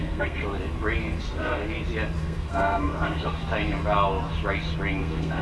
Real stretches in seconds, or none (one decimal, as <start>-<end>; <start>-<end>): 0.4-1.2; 1.6-2.2; 3.4-5.0